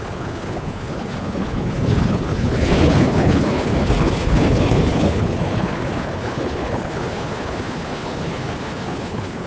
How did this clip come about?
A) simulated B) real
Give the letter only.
A